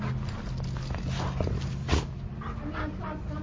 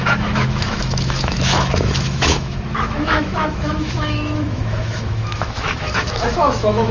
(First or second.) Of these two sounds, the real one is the first